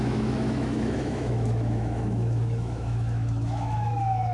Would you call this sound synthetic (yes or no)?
yes